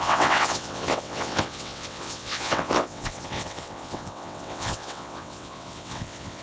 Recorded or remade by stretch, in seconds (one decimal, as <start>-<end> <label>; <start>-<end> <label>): 0.0-6.4 remade

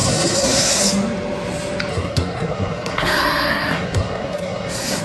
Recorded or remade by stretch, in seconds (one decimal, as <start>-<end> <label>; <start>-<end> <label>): 0.0-0.8 remade; 0.8-1.9 recorded; 1.9-5.0 remade

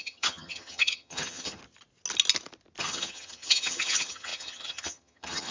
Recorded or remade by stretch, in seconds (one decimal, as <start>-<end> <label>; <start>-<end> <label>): 0.0-1.6 remade; 1.6-2.8 recorded; 2.8-5.5 remade

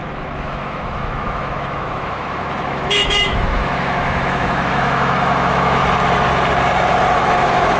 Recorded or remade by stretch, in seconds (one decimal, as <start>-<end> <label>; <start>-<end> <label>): 0.0-5.8 remade; 5.8-7.2 recorded; 7.2-7.8 remade

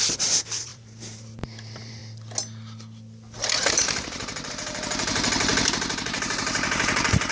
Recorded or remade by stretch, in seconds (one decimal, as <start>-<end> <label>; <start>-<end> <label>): 0.0-2.0 remade; 2.0-4.5 recorded; 4.5-5.5 remade; 5.5-6.1 recorded; 6.1-7.3 remade